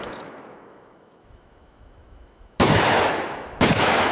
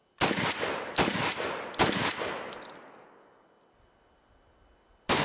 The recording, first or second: second